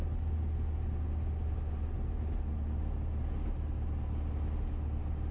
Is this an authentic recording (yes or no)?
yes